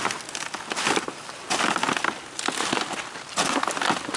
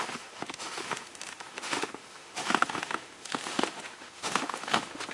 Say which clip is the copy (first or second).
second